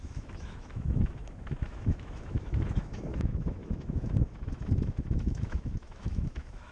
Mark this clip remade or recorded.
remade